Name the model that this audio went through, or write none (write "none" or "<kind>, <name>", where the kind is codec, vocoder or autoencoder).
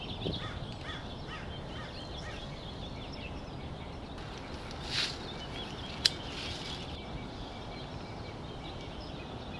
none